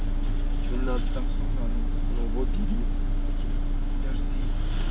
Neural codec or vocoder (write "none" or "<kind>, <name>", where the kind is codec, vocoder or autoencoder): none